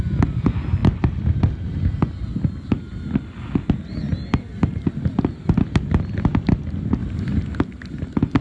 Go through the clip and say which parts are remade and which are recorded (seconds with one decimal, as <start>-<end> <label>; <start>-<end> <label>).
0.0-0.8 recorded; 0.8-2.0 remade; 2.0-7.0 recorded; 7.0-7.6 remade; 7.6-8.4 recorded